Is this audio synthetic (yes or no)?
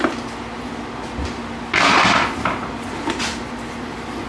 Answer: no